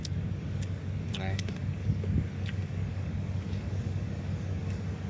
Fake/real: fake